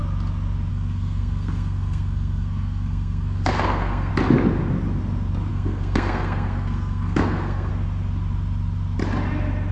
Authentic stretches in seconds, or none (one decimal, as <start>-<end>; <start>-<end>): 0.0-0.7; 4.1-5.5; 7.7-9.7